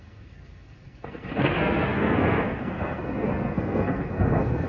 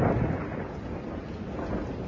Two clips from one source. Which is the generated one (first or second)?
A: first